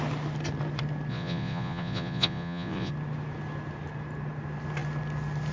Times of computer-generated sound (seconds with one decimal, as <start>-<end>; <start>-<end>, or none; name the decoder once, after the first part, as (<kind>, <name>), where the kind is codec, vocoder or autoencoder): 1.1-2.9 (vocoder, Vocos)